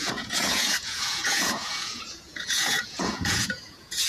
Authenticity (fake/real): fake